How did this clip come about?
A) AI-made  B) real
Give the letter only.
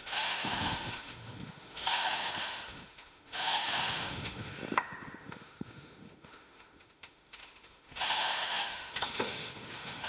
A